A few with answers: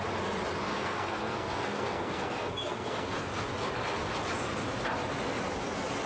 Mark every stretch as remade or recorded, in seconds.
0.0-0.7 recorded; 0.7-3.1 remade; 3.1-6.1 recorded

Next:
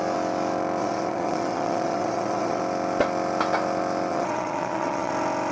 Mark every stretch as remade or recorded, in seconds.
0.0-0.8 recorded; 0.8-2.6 remade; 2.6-4.1 recorded; 4.1-5.1 remade; 5.1-5.5 recorded

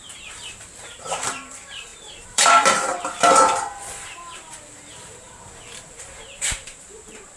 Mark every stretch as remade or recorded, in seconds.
0.0-7.4 remade

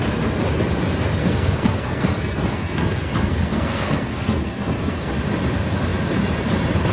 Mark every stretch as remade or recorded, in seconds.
0.0-1.2 recorded; 1.2-5.1 remade; 5.1-6.9 recorded